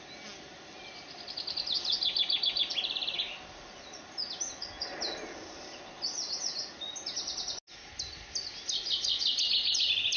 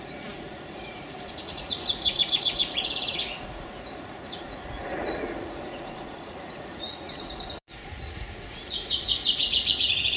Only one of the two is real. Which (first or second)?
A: first